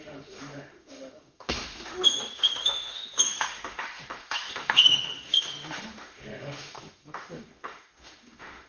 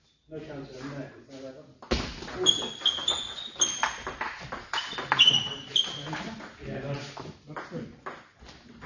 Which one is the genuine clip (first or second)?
second